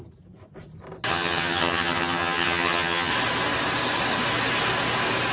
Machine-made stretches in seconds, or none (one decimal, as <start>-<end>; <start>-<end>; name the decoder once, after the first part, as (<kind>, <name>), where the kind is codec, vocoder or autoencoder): 1.1-3.1 (vocoder, HiFi-GAN)